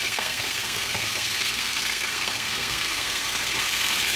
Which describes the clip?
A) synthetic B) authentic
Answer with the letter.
A